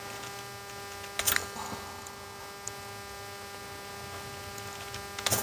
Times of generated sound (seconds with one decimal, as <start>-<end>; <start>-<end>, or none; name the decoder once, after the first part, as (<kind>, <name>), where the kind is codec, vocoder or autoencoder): none